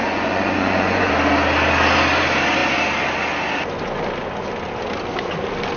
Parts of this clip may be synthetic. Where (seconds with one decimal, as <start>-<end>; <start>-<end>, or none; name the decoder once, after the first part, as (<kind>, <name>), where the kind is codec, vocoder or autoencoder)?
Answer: 0.0-1.1 (vocoder, Vocos)